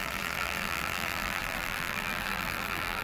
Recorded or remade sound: remade